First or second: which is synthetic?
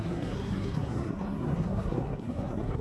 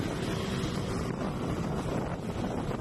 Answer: first